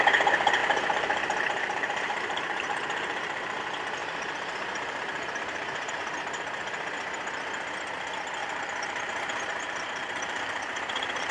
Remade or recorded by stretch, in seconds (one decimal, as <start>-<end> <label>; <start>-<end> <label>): 0.0-0.6 recorded; 0.6-3.6 remade; 3.6-4.0 recorded; 4.0-5.9 remade; 5.9-8.4 recorded; 8.4-11.3 remade